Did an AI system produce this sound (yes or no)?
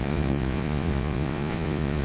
yes